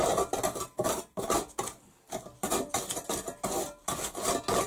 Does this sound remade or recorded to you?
recorded